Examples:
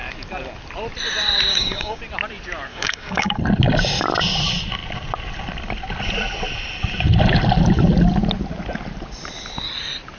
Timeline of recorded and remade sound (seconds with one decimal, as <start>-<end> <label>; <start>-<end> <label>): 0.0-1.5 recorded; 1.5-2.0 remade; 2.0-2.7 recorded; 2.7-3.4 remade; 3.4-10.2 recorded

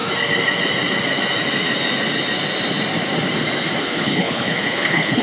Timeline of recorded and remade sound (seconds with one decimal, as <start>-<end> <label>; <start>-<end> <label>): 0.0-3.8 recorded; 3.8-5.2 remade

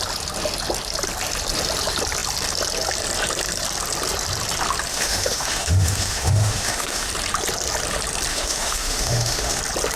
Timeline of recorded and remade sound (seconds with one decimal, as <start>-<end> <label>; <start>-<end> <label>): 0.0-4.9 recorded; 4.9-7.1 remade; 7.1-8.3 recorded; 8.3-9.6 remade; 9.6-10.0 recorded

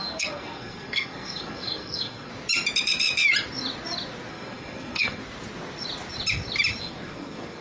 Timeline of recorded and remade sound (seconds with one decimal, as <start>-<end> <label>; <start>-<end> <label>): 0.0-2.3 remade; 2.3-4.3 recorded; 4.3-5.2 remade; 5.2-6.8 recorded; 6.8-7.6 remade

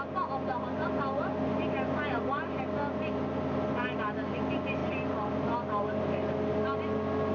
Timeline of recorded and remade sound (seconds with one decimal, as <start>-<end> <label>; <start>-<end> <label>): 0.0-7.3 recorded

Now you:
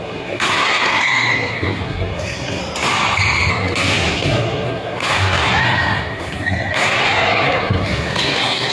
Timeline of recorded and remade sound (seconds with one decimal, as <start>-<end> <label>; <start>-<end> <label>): 0.0-2.6 remade; 2.6-3.5 recorded; 3.5-8.7 remade

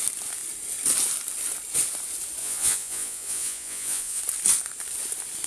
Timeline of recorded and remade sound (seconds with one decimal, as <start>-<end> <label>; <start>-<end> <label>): 0.0-2.4 recorded; 2.4-4.2 remade; 4.2-5.5 recorded